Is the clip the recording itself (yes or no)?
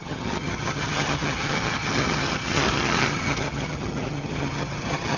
no